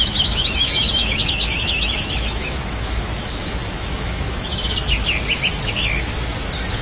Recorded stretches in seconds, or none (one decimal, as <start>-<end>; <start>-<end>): 4.5-6.8